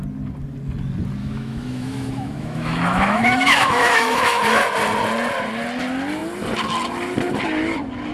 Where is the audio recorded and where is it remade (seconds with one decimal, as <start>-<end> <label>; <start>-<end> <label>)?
0.0-1.2 recorded; 1.2-4.6 remade; 4.6-8.1 recorded